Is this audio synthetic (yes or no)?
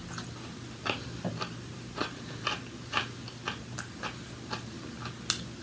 no